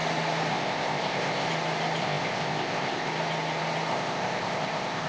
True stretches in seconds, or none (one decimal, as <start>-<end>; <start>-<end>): 0.0-0.5; 1.5-2.0; 3.1-3.9